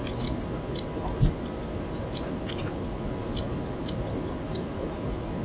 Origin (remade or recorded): recorded